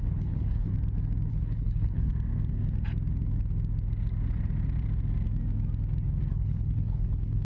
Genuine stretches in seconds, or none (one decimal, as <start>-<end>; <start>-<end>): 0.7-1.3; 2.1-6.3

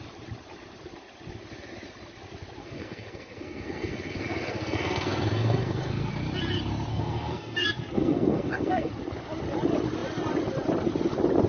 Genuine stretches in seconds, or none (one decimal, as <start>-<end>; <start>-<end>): 0.0-2.6; 6.1-6.9; 8.9-11.5

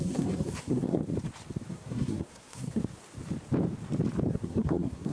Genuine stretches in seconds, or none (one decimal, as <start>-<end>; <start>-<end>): 1.0-1.7; 2.8-4.3

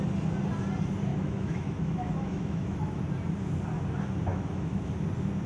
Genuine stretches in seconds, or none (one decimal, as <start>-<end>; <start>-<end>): 0.0-1.1; 3.0-4.3; 4.9-5.5

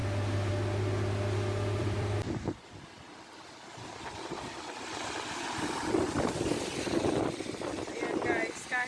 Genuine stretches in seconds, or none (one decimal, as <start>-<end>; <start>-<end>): 0.0-1.8; 2.6-8.9

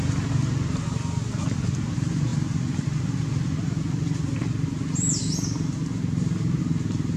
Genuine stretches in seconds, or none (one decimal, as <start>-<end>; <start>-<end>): 0.0-7.2

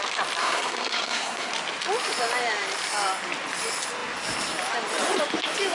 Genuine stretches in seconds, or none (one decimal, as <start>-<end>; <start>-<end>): 0.0-0.4; 1.5-5.7